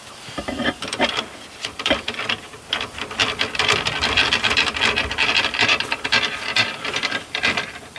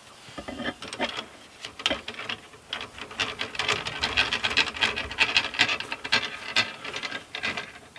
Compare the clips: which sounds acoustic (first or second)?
second